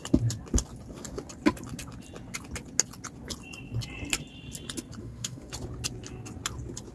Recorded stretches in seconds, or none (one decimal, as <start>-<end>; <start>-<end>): 0.0-5.0; 5.5-6.9